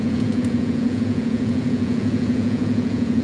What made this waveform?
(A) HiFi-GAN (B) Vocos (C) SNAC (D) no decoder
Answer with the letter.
B